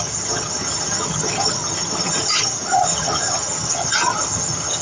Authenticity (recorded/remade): remade